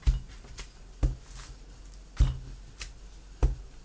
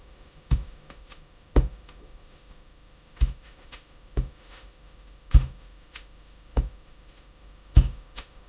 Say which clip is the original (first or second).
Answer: first